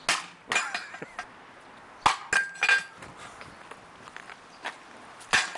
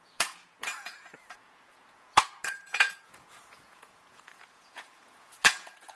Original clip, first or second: first